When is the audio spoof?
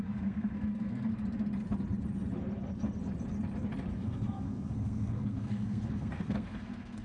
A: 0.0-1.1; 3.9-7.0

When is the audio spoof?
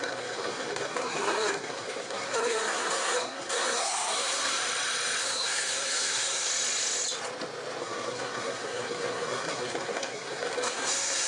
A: 0.0-4.6; 5.2-6.5; 7.8-11.3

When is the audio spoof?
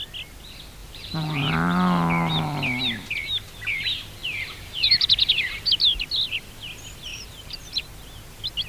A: 0.8-1.5; 4.2-5.5; 7.1-7.8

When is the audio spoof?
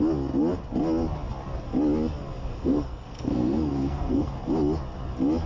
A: 2.4-4.3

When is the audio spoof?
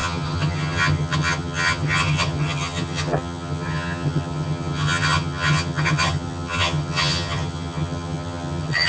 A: 0.0-8.9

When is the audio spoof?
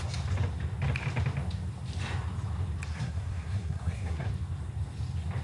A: 2.9-4.3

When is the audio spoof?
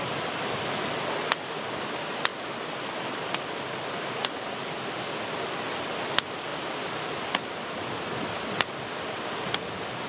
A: none